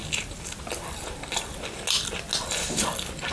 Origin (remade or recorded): recorded